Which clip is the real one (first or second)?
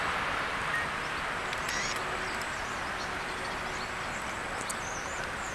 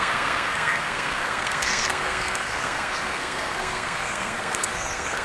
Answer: first